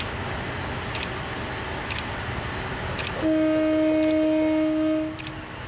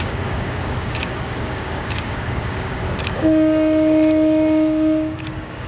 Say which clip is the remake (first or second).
second